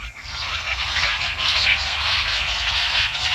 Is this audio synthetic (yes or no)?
yes